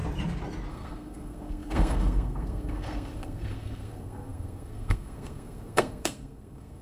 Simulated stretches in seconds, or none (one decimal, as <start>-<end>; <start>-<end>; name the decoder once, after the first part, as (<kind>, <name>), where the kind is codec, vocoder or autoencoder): 0.7-6.8 (codec, SNAC)